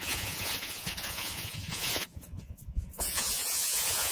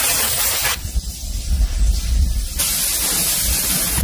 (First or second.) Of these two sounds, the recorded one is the second